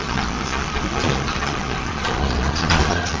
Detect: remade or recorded remade